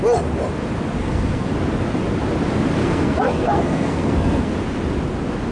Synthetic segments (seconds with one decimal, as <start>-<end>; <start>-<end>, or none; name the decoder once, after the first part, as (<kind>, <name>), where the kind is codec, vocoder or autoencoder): 1.0-1.5 (codec, SNAC); 2.8-4.5